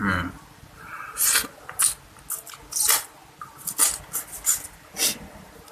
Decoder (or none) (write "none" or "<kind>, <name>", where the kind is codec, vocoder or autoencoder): none